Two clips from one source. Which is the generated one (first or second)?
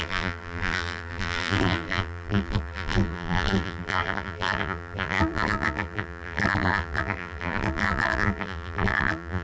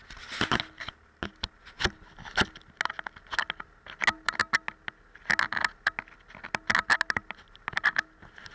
first